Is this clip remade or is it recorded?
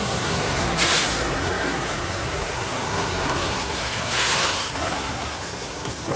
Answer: remade